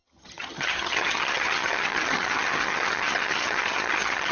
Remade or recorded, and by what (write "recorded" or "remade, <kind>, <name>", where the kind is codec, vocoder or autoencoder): remade, vocoder, HiFi-GAN